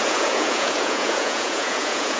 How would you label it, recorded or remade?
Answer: remade